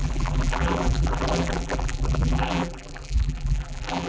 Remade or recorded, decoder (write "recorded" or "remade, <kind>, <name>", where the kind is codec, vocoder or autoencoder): remade, vocoder, BigVGAN v2